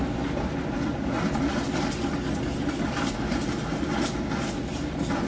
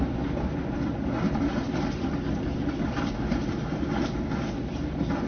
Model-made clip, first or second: second